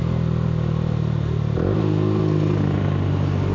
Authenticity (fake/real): real